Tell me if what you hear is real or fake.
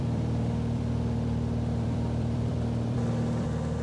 fake